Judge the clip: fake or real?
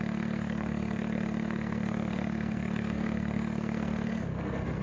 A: fake